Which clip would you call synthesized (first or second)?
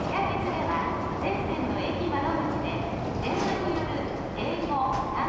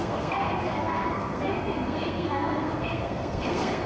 second